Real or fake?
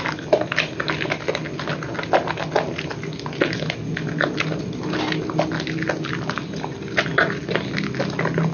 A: real